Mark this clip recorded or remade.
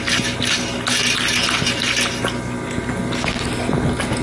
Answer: recorded